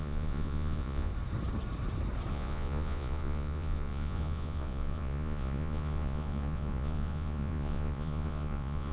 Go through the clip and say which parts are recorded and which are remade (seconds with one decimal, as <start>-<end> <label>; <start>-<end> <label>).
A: 0.0-1.1 remade; 1.1-2.3 recorded; 2.3-8.9 remade